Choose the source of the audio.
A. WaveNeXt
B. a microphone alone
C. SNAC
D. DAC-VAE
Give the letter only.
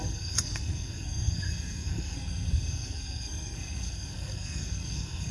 C